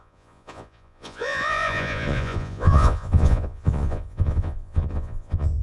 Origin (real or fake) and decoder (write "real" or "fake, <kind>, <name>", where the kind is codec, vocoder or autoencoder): fake, vocoder, Vocos